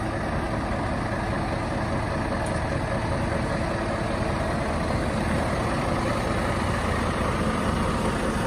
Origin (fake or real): real